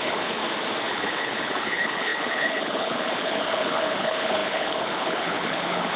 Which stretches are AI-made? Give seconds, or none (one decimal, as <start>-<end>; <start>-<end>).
0.0-0.4; 0.9-6.0